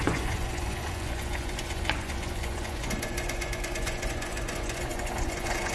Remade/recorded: remade